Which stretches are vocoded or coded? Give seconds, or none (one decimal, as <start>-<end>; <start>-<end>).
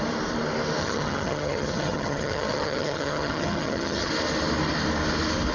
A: 0.8-4.1